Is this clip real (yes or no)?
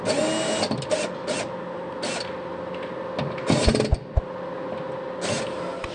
yes